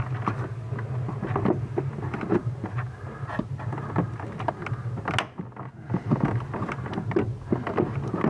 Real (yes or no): yes